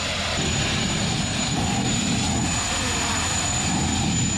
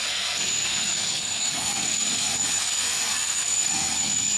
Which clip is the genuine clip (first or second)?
first